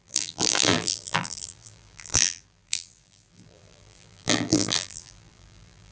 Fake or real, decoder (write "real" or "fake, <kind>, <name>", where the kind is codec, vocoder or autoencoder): fake, vocoder, BigVGAN v2